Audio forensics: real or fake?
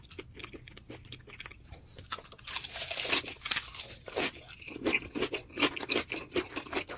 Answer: real